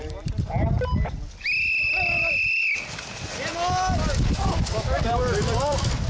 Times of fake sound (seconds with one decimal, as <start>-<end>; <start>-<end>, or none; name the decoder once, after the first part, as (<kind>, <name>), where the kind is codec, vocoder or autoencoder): none